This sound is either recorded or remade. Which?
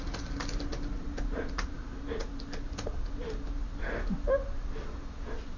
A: recorded